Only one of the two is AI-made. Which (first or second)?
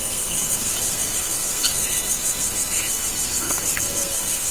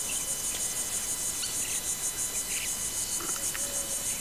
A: first